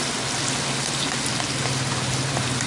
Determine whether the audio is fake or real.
real